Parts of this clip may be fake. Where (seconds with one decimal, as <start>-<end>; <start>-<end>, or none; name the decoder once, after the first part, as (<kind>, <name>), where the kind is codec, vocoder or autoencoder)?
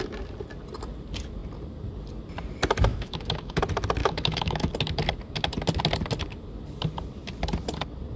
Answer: 2.9-3.6 (autoencoder, DAC-VAE); 4.0-4.7